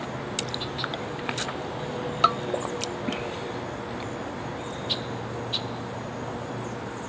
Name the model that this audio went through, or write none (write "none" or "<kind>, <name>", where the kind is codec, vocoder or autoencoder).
none